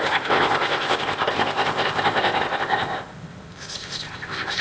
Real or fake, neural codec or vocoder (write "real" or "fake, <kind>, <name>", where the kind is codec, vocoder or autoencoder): fake, codec, ZipCodec